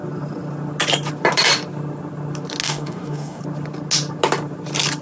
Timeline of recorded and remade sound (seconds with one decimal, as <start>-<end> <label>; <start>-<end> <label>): 0.0-2.6 recorded; 2.6-3.4 remade; 3.4-5.0 recorded